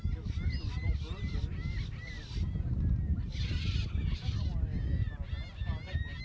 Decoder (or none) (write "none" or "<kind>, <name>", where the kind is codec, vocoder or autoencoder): none